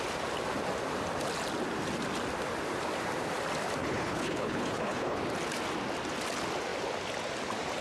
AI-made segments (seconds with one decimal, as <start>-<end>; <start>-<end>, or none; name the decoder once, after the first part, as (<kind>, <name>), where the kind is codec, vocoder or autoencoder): 3.8-5.2 (codec, HILCodec)

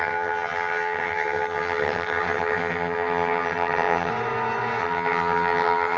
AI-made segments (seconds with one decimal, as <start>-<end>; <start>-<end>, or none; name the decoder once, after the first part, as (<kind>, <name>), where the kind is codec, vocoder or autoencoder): 0.0-4.1 (vocoder, HiFi-GAN); 4.8-6.0

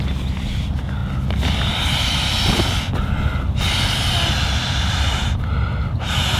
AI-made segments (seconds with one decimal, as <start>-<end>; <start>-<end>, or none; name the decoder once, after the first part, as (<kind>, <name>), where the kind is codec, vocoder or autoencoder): none

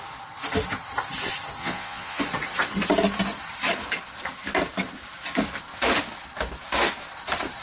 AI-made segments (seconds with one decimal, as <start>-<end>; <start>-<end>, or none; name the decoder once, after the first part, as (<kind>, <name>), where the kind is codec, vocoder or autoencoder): 1.6-2.2 (vocoder, Vocos)